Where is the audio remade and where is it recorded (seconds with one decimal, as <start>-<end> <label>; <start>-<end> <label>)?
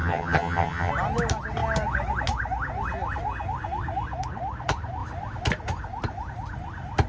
0.0-0.9 remade; 0.9-7.1 recorded